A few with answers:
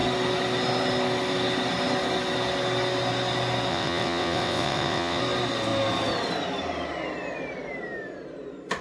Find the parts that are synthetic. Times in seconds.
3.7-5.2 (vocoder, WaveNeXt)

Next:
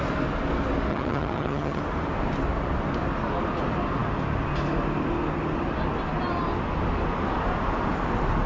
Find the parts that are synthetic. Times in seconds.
0.9-1.8 (vocoder, HiFi-GAN)

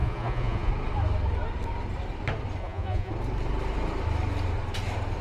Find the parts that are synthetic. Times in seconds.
0.0-0.7 (vocoder, Vocos); 2.6-3.1

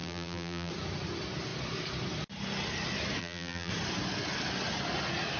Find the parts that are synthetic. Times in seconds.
0.0-0.7 (vocoder, BigVGAN v2); 3.2-3.7

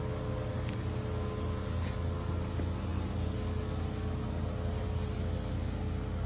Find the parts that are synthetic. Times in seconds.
none

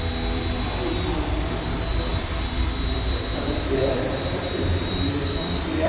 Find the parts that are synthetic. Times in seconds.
2.1-5.9 (vocoder, BigVGAN v2)

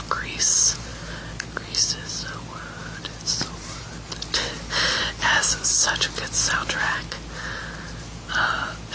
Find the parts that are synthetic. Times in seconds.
none